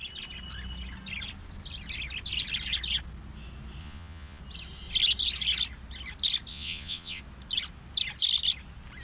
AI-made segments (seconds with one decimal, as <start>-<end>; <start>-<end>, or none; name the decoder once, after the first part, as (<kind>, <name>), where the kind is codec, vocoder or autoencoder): 3.8-4.4 (vocoder, Vocos); 6.5-7.2